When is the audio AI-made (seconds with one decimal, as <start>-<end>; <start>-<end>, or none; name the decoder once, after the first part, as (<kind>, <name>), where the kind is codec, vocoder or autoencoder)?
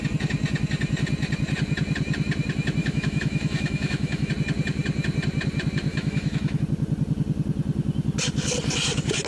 2.8-4.3 (autoencoder, DAC-VAE); 5.9-6.6